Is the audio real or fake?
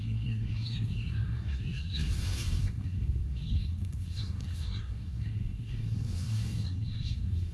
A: fake